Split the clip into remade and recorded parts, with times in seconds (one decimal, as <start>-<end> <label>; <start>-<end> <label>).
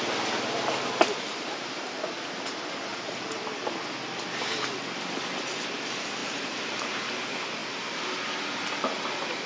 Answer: 0.0-2.9 recorded; 2.9-3.7 remade; 3.7-6.2 recorded; 6.2-6.9 remade; 6.9-7.6 recorded; 7.6-8.2 remade; 8.2-9.5 recorded